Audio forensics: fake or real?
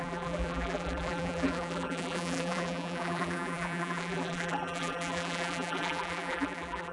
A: fake